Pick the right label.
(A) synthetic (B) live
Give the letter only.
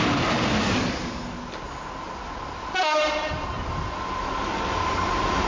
B